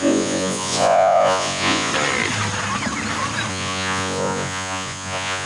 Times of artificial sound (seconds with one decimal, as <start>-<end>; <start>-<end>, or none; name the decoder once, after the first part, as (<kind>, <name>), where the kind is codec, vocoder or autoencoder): 0.0-1.9 (vocoder, Vocos); 3.5-5.5